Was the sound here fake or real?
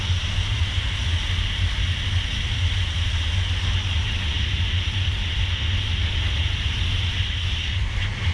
real